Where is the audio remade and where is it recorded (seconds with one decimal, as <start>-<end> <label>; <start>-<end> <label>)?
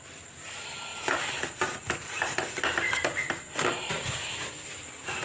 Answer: 0.0-5.2 recorded